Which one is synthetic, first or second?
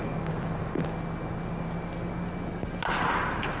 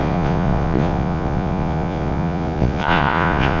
second